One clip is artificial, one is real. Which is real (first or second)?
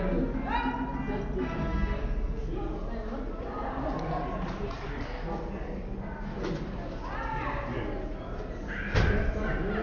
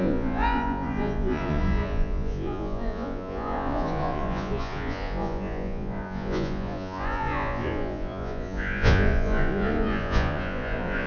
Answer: first